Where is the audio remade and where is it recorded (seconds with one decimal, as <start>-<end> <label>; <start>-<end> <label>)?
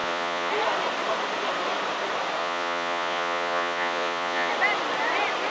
0.0-0.5 remade; 0.5-2.4 recorded; 2.4-4.5 remade; 4.5-5.5 recorded